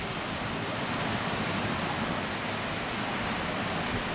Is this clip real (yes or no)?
yes